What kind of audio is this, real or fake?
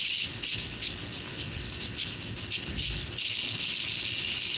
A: real